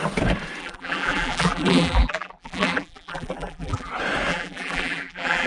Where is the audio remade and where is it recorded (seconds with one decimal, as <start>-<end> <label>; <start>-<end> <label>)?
0.0-0.6 recorded; 0.6-3.9 remade; 3.9-4.3 recorded; 4.3-5.5 remade